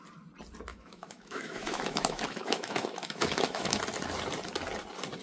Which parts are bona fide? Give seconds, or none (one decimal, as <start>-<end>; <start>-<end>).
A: 0.0-0.7; 3.8-5.2